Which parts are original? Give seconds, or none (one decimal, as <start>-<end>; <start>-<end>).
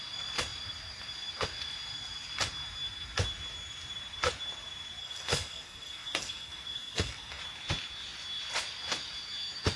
0.0-5.0; 7.4-9.8